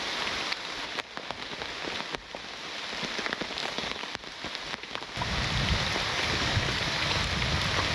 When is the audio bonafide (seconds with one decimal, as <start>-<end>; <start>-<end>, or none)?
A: 0.0-3.6; 4.2-6.1; 7.2-7.9